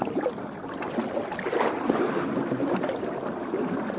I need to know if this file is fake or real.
real